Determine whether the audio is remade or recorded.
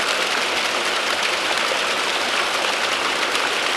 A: recorded